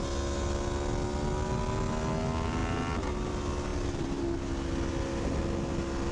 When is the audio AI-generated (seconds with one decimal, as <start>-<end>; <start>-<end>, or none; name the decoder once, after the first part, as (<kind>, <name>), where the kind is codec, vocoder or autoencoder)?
none